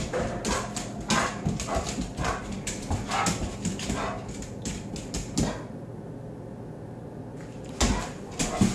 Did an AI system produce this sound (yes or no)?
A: no